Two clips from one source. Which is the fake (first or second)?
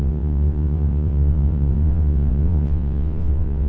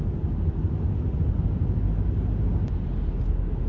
first